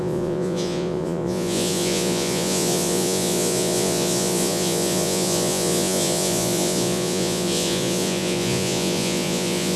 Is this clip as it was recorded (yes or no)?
no